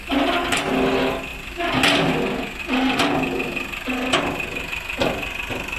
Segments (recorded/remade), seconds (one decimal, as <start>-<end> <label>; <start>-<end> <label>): 0.0-5.8 recorded